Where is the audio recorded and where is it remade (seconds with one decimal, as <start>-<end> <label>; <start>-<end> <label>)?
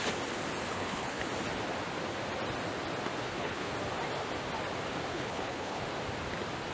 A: 0.0-0.7 recorded; 0.7-1.2 remade; 1.2-3.2 recorded; 3.2-3.7 remade; 3.7-5.1 recorded; 5.1-5.8 remade; 5.8-6.7 recorded